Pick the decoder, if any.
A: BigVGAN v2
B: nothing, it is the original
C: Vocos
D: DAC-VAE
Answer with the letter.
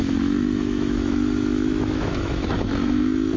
D